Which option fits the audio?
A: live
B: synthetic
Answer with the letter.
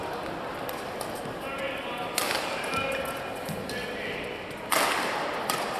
A